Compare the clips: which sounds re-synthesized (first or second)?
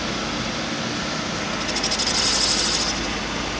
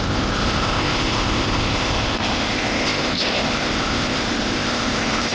second